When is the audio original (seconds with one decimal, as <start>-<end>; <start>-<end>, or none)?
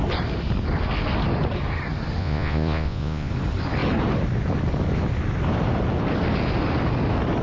0.0-2.2; 3.3-7.4